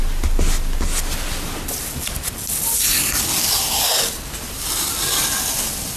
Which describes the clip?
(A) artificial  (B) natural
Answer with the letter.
B